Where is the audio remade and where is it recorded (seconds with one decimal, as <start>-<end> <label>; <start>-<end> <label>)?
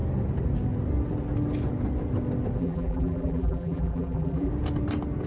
0.0-2.6 recorded; 2.6-4.5 remade; 4.5-5.3 recorded